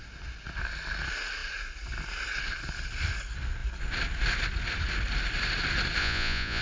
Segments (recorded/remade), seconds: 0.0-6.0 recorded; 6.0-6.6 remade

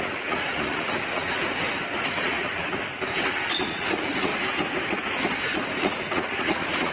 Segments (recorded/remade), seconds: 0.0-1.4 remade; 1.4-2.0 recorded; 2.0-2.8 remade; 2.8-3.5 recorded; 3.5-4.3 remade; 4.3-5.8 recorded; 5.8-6.9 remade